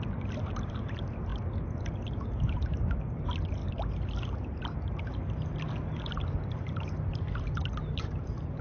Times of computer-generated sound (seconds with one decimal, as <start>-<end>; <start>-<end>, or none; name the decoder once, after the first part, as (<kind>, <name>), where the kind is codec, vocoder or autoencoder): none